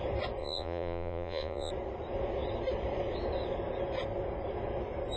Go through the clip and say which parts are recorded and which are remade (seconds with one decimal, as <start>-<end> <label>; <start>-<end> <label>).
0.0-0.4 recorded; 0.4-1.7 remade; 1.7-5.2 recorded